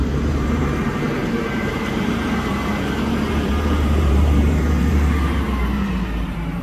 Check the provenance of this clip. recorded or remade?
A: remade